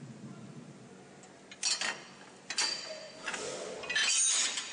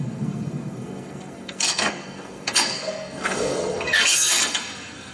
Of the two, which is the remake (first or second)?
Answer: second